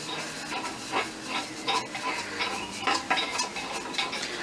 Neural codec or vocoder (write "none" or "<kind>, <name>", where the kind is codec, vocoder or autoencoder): none